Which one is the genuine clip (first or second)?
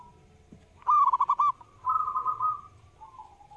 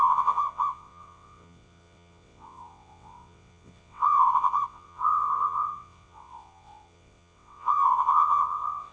first